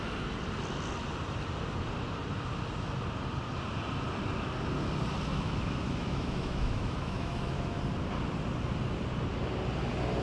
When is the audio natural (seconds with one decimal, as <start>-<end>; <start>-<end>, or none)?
0.0-5.3; 7.8-10.2